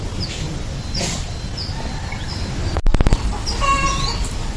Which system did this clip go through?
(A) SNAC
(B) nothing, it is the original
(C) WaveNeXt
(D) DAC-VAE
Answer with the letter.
B